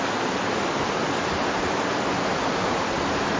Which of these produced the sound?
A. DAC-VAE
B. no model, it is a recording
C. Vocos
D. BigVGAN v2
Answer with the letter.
D